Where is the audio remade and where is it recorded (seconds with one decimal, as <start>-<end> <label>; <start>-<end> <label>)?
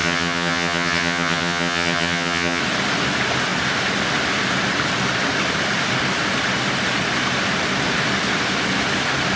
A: 0.0-2.6 remade; 2.6-9.4 recorded